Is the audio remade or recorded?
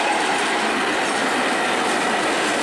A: recorded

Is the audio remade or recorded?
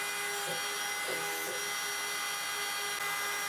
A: recorded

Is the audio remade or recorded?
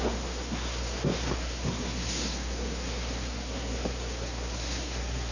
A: remade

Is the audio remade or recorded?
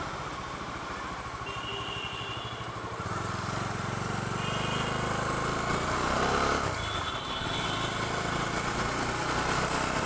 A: recorded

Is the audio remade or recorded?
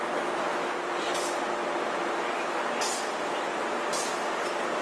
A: recorded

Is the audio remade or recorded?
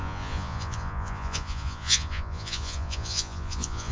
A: remade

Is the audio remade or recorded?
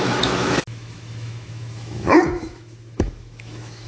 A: remade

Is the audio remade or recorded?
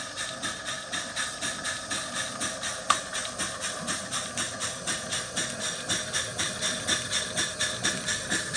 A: recorded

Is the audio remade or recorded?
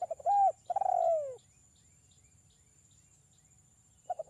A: recorded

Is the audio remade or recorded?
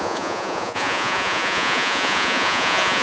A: remade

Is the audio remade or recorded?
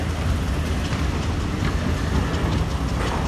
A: recorded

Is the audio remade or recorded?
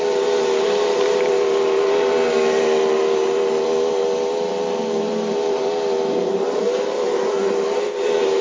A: remade